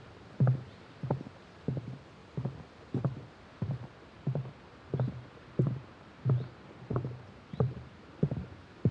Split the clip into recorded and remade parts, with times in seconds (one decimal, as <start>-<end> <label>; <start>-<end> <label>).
0.0-2.2 remade; 2.2-3.0 recorded; 3.0-8.9 remade